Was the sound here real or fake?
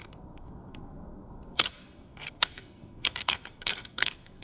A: fake